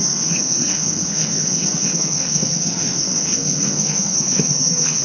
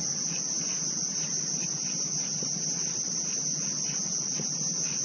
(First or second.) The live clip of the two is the second